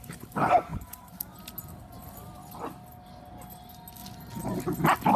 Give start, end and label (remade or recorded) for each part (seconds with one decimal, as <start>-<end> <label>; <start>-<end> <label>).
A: 0.0-5.2 recorded